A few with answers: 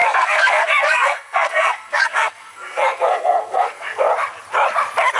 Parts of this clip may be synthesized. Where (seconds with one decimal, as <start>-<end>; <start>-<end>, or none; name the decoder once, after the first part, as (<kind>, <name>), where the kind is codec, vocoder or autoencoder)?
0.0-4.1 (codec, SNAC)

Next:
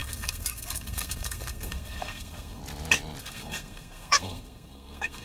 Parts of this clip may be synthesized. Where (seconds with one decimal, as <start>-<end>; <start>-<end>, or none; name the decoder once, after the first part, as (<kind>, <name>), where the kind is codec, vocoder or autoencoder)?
0.0-2.6 (codec, SNAC); 3.2-5.2

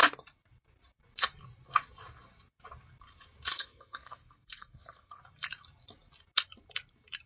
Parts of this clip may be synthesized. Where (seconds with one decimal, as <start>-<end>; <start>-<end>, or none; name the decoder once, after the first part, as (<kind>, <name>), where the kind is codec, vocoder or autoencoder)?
3.5-5.2 (codec, SNAC)